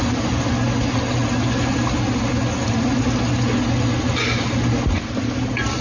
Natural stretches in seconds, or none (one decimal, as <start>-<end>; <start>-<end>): 0.0-5.8